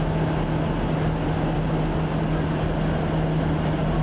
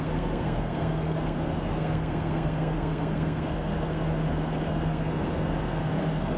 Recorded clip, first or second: first